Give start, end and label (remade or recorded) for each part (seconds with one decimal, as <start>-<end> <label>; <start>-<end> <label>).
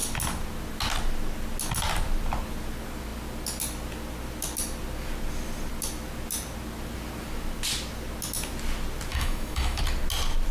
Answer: 0.0-9.1 recorded; 9.1-9.8 remade; 9.8-10.5 recorded